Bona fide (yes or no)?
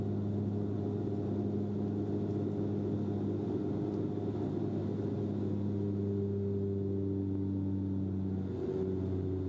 yes